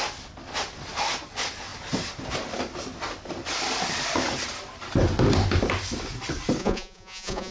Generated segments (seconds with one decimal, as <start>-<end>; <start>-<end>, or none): 6.6-7.5